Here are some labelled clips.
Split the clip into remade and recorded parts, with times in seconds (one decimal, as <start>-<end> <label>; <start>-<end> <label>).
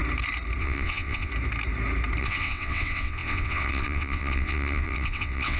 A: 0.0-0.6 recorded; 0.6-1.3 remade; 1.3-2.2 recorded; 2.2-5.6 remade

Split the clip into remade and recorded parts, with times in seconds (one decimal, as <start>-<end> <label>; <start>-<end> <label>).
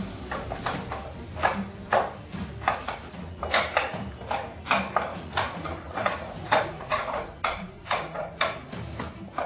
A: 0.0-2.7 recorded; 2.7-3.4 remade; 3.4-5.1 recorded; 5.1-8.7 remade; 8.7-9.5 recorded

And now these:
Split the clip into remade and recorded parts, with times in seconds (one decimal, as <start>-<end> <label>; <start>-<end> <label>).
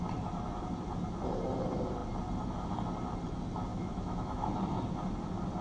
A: 0.0-3.7 recorded; 3.7-4.5 remade; 4.5-5.6 recorded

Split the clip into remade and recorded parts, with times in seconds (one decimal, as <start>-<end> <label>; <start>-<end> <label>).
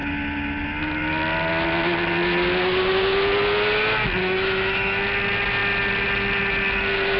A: 0.0-4.2 recorded; 4.2-5.0 remade; 5.0-7.2 recorded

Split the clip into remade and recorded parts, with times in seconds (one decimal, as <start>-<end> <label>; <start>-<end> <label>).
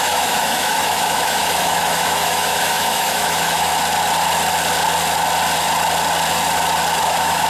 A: 0.0-3.7 remade; 3.7-7.0 recorded; 7.0-7.5 remade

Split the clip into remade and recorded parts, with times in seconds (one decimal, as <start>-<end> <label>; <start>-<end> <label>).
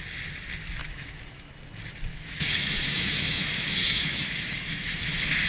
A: 0.0-0.8 recorded; 0.8-1.5 remade; 1.5-2.1 recorded; 2.1-5.1 remade; 5.1-5.5 recorded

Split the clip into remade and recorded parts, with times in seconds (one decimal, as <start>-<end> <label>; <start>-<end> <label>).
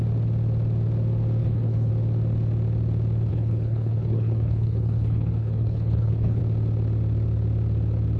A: 0.0-1.4 recorded; 1.4-1.9 remade; 1.9-3.3 recorded; 3.3-6.4 remade; 6.4-8.2 recorded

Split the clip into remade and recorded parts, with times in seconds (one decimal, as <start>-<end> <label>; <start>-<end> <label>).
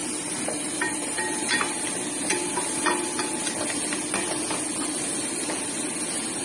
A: 0.0-2.5 remade; 2.5-6.4 recorded